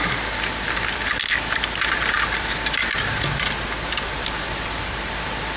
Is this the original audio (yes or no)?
yes